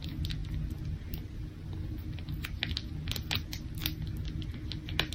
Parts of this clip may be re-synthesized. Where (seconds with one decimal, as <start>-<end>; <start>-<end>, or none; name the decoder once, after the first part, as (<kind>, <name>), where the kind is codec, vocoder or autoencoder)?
none